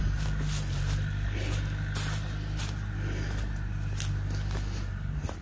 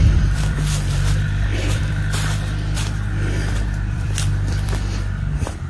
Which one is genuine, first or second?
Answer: first